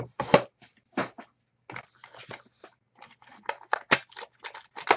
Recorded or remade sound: recorded